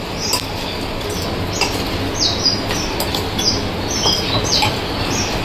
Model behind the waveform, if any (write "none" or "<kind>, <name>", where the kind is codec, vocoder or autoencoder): none